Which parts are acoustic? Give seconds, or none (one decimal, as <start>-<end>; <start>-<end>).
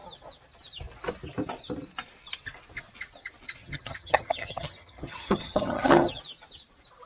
0.0-3.6; 6.2-7.1